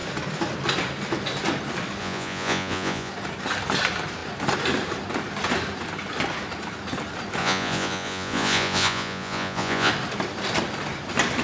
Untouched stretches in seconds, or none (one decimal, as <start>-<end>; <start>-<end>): 0.0-2.0; 3.1-7.4; 9.9-11.4